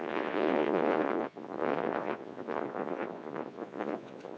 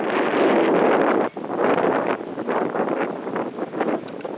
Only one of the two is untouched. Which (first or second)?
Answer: second